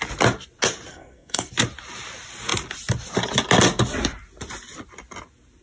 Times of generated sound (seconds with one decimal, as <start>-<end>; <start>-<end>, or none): 0.9-1.5